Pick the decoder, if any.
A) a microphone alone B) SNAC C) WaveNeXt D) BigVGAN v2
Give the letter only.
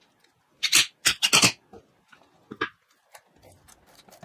A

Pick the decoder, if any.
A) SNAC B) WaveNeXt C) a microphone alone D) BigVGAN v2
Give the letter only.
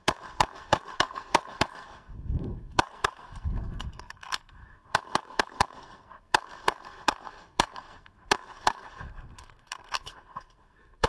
A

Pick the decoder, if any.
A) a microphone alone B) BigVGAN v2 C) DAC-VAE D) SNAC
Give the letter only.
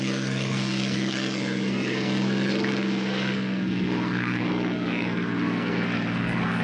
D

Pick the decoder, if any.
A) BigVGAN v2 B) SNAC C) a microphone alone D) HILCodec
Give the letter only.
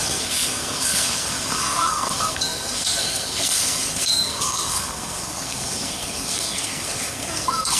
B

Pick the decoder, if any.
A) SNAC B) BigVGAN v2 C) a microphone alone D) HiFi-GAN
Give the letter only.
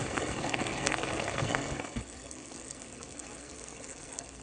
A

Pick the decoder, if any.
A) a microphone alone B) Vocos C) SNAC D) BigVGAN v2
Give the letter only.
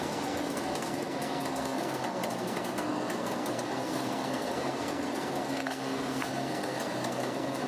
C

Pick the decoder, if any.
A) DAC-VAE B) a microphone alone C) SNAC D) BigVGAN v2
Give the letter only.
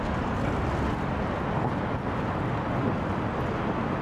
B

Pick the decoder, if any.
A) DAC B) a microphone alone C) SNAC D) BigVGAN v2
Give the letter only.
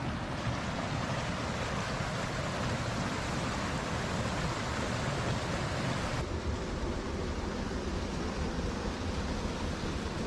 B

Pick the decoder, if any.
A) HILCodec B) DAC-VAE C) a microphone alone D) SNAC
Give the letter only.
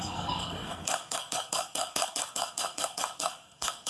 D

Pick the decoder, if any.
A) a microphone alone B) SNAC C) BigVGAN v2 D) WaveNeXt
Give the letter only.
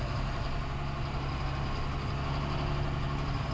A